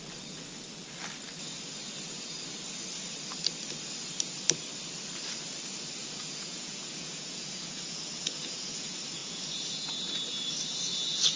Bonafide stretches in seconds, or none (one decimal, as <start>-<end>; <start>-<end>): 0.0-6.0; 8.4-9.2; 9.9-11.4